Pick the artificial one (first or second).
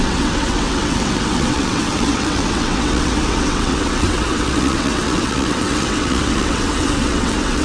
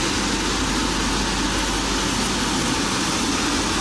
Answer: first